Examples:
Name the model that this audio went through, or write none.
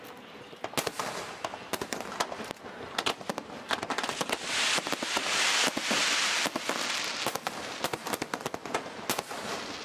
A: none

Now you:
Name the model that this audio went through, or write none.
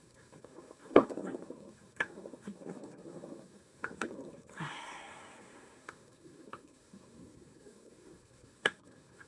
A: codec, SNAC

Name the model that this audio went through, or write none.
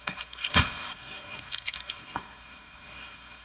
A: codec, SNAC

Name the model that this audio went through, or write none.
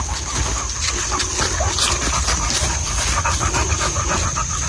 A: none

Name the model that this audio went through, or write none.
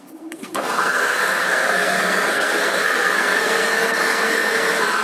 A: codec, SNAC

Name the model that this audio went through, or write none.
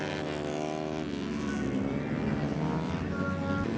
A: none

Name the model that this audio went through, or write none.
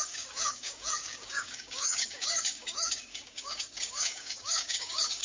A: codec, DAC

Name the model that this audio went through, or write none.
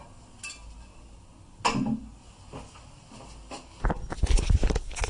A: none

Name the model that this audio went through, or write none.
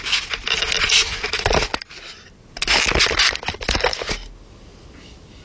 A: none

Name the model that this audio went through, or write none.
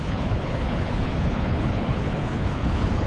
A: codec, HILCodec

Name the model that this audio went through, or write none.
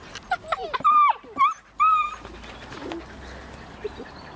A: none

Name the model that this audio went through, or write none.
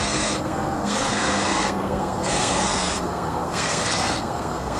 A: codec, SNAC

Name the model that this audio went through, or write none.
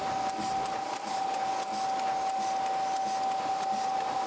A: none